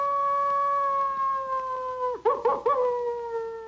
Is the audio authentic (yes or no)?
yes